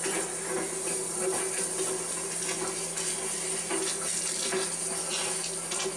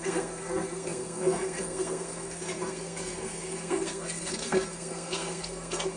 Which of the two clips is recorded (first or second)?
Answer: first